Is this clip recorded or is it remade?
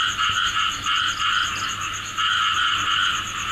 recorded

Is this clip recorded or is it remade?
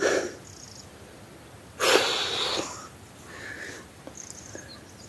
recorded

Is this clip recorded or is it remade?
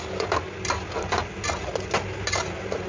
recorded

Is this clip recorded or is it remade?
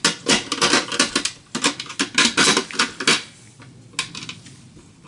recorded